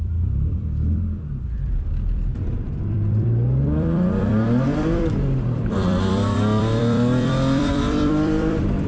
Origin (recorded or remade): remade